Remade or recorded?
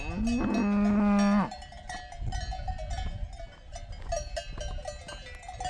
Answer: recorded